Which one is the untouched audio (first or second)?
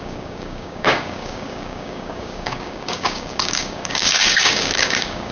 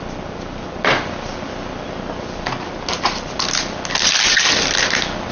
second